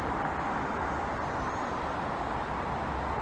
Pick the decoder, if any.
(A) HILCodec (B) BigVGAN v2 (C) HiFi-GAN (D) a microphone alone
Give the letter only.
D